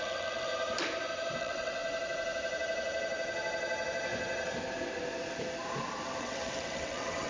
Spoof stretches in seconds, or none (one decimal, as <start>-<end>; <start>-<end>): 0.0-0.5; 1.4-1.8; 6.2-7.3